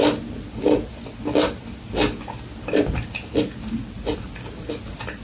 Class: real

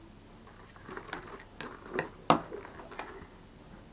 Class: real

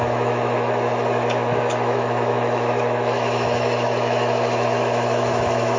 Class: fake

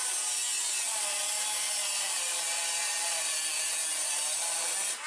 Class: real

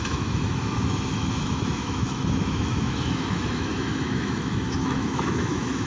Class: fake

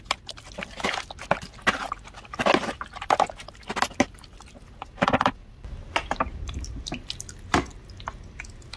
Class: real